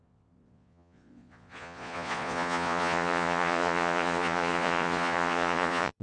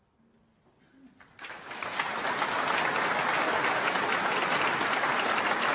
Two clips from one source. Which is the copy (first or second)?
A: first